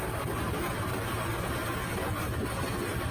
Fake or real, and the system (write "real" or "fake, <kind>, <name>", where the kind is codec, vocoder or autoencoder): real